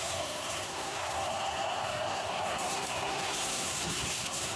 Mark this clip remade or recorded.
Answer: remade